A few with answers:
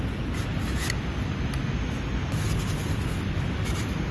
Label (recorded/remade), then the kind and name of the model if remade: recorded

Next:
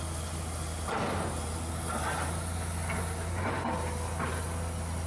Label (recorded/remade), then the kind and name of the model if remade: recorded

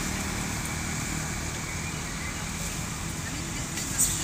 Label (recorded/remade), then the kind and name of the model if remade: recorded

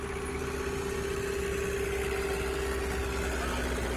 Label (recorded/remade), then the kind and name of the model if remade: recorded